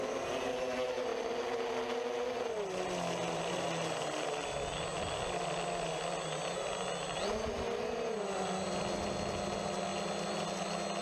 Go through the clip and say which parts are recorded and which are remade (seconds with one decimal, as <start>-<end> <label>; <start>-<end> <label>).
0.0-11.0 recorded